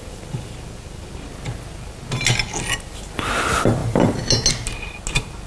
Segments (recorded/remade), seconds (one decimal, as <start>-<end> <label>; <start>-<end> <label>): 0.0-5.5 recorded